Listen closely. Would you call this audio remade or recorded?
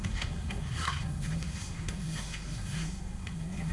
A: remade